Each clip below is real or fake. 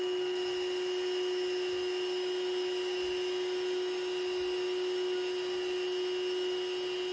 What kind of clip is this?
real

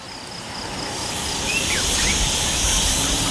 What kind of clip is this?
real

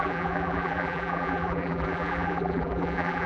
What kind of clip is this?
fake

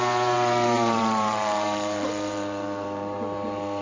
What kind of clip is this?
fake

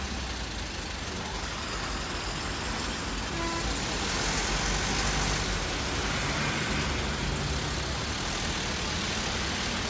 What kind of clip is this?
real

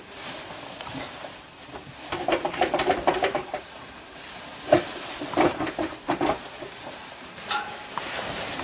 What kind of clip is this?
fake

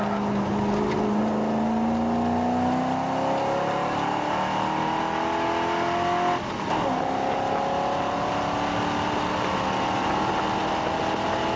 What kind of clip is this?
real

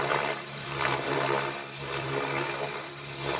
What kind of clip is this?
fake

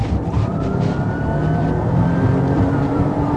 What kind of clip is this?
fake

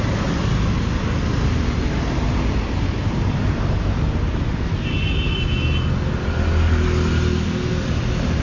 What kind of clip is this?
real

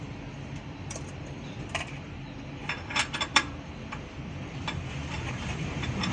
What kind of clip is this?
fake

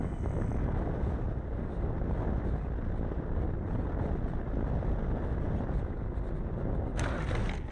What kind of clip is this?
real